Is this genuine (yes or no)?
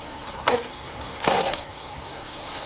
no